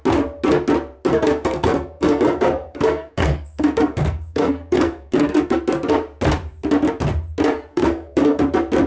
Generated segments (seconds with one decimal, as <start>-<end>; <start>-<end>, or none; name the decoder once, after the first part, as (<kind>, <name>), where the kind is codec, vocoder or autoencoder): 1.1-5.6 (codec, SNAC); 7.7-8.4